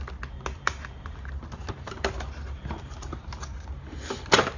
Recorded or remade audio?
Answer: recorded